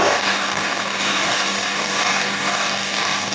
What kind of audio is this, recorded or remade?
remade